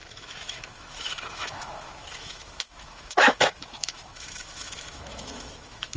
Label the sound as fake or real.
fake